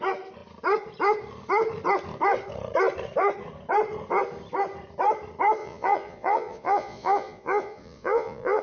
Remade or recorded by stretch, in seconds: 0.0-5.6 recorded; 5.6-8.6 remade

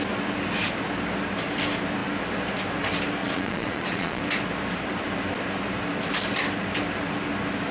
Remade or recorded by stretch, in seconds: 0.0-3.2 recorded; 3.2-4.2 remade; 4.2-7.7 recorded

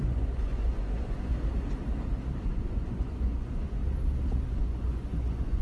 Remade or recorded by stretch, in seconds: 0.0-1.3 remade; 1.3-2.4 recorded; 2.4-3.8 remade; 3.8-4.5 recorded; 4.5-5.6 remade

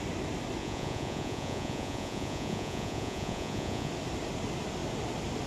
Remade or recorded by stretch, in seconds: 0.0-0.6 recorded; 0.6-3.9 remade; 3.9-5.5 recorded

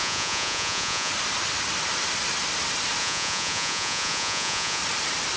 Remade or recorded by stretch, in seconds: 0.0-1.1 remade; 1.1-3.0 recorded; 3.0-4.8 remade; 4.8-5.4 recorded